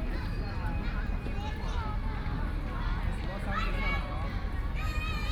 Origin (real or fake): real